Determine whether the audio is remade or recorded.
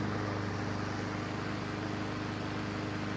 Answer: recorded